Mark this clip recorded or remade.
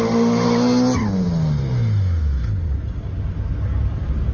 recorded